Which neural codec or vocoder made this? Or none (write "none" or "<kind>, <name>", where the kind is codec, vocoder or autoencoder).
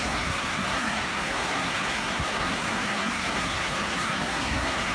codec, SNAC